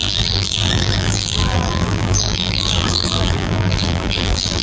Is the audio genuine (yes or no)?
no